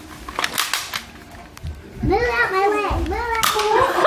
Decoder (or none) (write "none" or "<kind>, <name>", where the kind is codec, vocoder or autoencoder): none